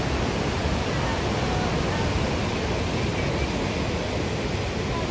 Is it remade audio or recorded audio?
recorded